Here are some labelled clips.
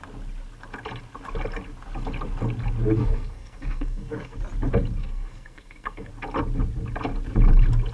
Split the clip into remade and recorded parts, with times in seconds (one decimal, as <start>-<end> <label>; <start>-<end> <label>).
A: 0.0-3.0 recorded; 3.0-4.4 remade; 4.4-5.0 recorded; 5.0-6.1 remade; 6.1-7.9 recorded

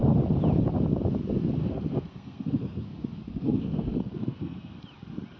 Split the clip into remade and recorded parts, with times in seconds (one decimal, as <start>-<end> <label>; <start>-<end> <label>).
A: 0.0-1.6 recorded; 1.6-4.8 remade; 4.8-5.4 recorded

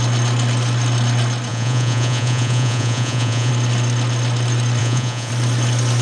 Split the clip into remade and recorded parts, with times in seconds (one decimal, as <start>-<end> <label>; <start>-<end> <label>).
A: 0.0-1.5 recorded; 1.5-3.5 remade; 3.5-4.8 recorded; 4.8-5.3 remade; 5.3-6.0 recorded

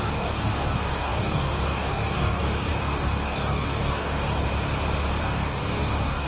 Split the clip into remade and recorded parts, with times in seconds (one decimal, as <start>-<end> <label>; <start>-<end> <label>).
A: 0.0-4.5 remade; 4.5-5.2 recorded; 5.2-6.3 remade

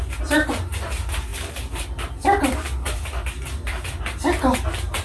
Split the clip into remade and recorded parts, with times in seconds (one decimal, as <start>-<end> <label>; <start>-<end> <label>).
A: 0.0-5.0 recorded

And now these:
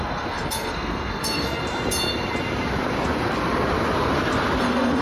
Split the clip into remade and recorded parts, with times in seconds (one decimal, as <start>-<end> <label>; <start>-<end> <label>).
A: 0.0-1.6 remade; 1.6-4.6 recorded; 4.6-5.0 remade